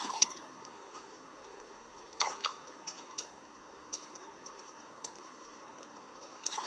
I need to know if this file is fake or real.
fake